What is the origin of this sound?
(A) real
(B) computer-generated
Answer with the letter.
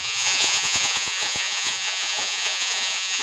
B